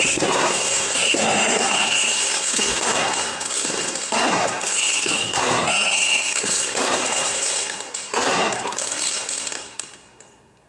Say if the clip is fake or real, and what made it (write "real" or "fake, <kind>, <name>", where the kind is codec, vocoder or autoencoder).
fake, codec, SNAC